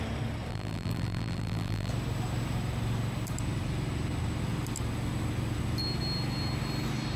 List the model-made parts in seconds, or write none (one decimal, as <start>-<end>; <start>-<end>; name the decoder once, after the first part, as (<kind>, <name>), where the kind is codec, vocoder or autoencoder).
0.5-1.9 (vocoder, BigVGAN v2)